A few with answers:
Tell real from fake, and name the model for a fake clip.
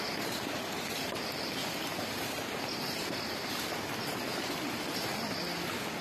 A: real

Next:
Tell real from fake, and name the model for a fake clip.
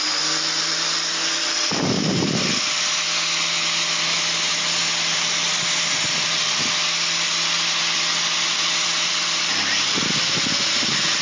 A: real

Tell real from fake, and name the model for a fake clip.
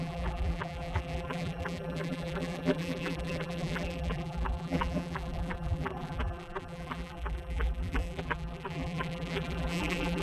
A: fake, vocoder, BigVGAN v2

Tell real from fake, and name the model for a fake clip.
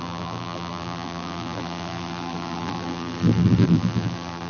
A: fake, vocoder, BigVGAN v2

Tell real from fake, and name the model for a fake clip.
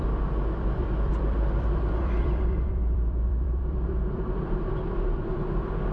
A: fake, vocoder, BigVGAN v2